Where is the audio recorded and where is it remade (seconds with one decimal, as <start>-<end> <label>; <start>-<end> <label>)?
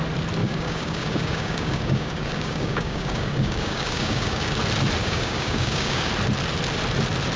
0.0-0.4 recorded; 0.4-4.6 remade; 4.6-5.0 recorded; 5.0-6.1 remade; 6.1-7.4 recorded